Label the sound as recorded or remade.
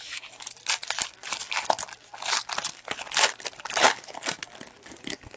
recorded